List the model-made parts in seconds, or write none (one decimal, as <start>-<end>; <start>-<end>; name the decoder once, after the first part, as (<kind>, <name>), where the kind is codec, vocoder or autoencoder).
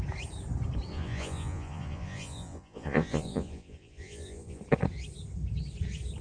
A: 0.9-4.6 (vocoder, Vocos)